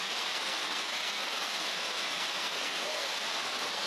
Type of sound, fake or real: fake